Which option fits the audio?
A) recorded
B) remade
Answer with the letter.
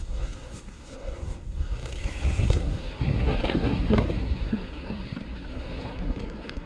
B